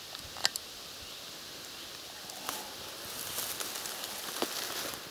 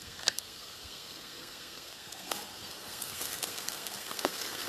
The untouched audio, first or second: first